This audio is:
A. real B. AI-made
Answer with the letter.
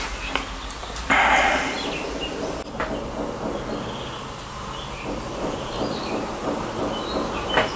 A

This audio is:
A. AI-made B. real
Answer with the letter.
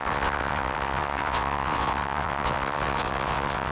A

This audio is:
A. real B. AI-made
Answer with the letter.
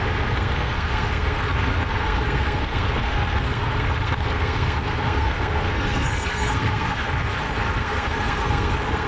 B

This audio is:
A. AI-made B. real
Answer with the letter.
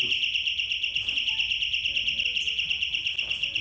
B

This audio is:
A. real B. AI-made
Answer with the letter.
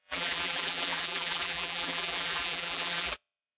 B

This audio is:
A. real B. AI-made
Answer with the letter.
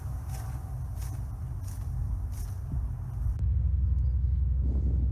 A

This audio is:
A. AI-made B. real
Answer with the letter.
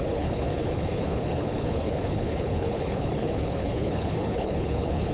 A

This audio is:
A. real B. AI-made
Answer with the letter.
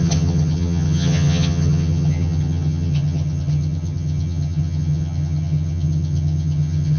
B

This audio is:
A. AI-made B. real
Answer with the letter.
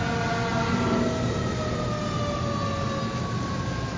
B